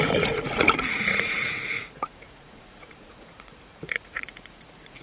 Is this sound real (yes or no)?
no